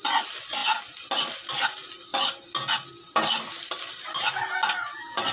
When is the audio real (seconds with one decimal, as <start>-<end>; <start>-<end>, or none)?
0.0-5.3